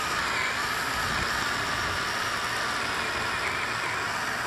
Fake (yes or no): no